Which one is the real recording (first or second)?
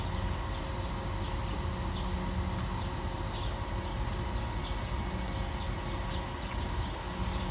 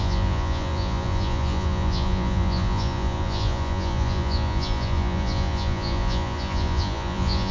first